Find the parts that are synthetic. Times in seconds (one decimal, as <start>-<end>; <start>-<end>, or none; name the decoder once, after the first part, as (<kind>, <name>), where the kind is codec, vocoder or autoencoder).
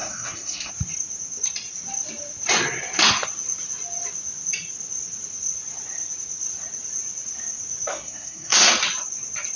0.0-0.7 (codec, SNAC); 7.9-8.7